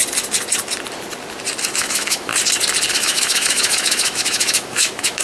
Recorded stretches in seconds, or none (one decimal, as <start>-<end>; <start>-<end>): 0.0-1.7; 2.3-2.9